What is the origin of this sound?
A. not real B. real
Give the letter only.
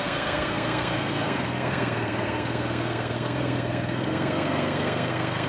A